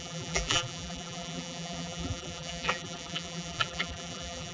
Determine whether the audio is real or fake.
fake